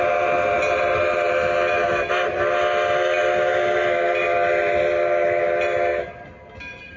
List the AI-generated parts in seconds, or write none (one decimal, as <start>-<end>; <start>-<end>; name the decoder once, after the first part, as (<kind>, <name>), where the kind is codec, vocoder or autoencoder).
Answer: none